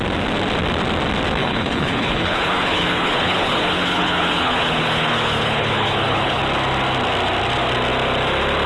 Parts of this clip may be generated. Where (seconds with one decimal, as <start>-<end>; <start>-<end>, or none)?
1.4-6.4

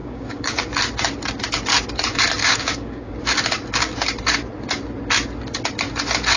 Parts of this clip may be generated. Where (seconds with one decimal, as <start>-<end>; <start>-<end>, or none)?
0.0-0.6; 2.4-3.1

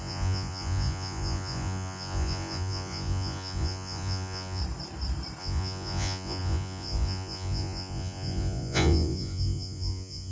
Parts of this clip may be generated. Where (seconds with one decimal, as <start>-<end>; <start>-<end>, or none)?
0.0-4.6; 5.4-10.3